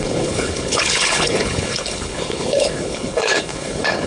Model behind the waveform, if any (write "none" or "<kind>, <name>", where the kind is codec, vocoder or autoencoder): codec, HILCodec